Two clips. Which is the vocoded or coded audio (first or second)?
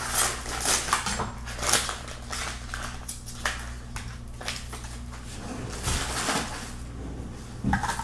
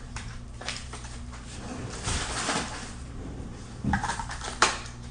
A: second